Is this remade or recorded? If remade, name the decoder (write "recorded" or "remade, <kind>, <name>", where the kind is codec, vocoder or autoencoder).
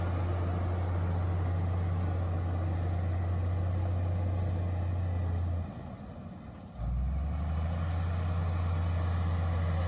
recorded